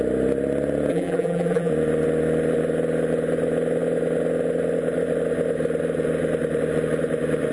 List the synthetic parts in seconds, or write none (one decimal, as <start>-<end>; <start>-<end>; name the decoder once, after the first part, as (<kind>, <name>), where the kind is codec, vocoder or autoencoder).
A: 0.9-1.7 (vocoder, BigVGAN v2)

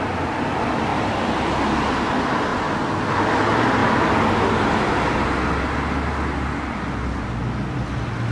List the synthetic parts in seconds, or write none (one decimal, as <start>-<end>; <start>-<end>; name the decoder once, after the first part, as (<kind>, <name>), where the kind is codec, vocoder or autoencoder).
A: none